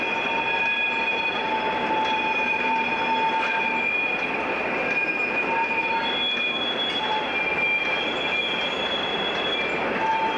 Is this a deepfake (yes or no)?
no